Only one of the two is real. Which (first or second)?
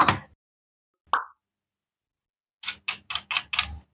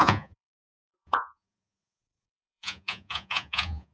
first